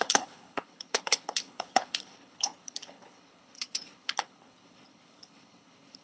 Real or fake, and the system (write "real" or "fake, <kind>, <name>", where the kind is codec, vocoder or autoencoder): fake, codec, HILCodec